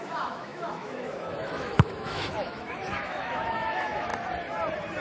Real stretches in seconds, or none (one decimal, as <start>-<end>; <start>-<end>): 4.1-5.0